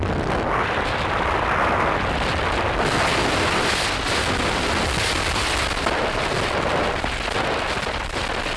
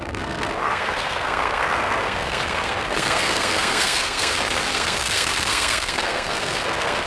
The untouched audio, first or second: first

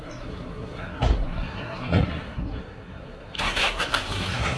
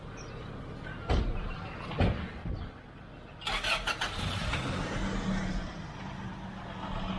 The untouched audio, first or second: second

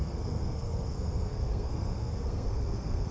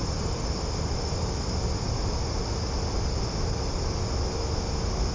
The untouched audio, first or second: second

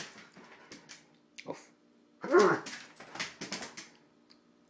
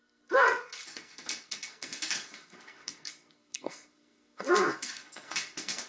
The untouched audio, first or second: first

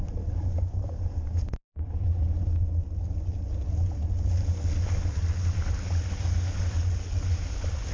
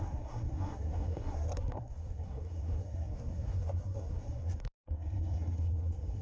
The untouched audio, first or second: first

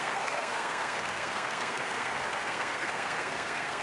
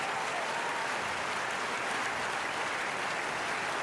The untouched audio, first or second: second